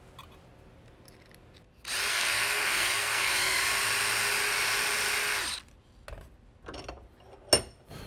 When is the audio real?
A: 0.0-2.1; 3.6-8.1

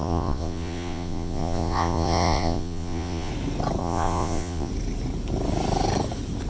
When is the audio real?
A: 3.3-3.8; 4.7-6.5